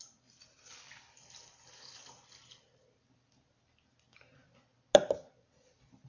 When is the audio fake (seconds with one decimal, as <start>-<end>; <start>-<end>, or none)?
none